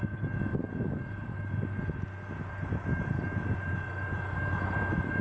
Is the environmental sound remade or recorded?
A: recorded